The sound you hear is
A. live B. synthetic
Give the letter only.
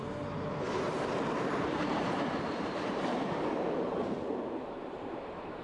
B